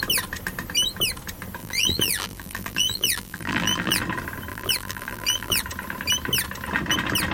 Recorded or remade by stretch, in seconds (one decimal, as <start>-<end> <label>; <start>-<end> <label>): 0.0-1.6 recorded; 1.6-4.0 remade; 4.0-4.5 recorded; 4.5-5.6 remade; 5.6-7.3 recorded